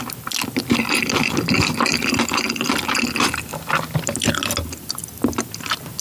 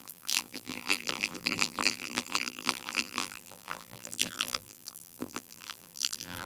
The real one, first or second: first